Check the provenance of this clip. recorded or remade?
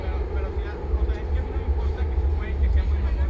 recorded